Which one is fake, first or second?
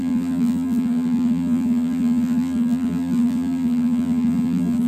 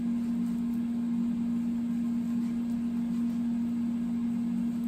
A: first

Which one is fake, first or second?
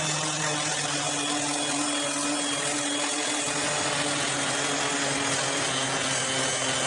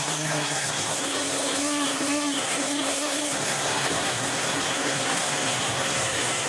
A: second